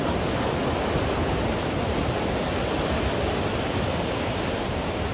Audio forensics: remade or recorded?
recorded